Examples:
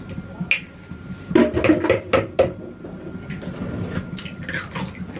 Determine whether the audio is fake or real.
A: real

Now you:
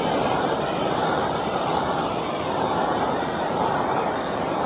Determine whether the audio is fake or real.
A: fake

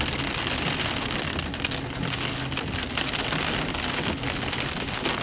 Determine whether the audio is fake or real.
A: real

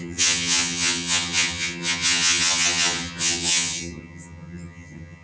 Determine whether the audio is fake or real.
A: fake